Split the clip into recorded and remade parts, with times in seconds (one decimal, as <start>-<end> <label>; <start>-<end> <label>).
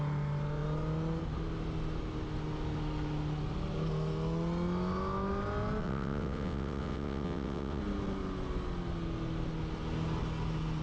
0.0-5.8 recorded; 5.8-7.8 remade; 7.8-10.8 recorded